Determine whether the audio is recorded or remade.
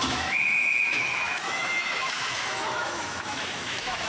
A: remade